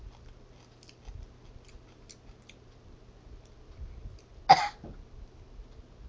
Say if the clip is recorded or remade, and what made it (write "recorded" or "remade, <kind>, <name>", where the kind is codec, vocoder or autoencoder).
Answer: recorded